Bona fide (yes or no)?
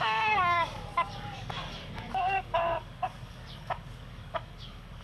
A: no